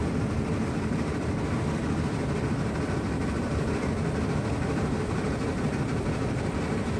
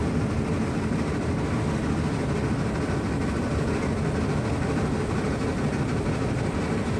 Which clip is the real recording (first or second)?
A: second